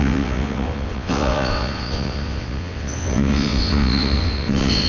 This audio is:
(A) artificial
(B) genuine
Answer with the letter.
A